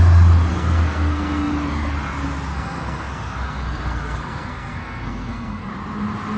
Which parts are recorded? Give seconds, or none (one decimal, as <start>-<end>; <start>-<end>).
0.0-0.5; 1.5-2.5; 5.7-6.4

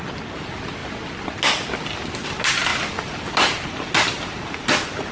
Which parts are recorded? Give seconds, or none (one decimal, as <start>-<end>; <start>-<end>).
0.0-5.1

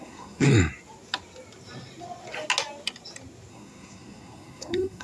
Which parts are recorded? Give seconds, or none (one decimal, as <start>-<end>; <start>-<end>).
0.5-3.5

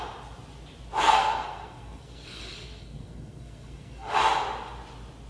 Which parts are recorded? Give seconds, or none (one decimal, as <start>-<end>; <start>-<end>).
0.0-1.0; 4.2-5.3

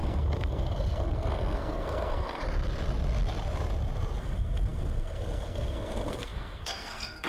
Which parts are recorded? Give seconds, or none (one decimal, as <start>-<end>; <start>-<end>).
2.4-4.2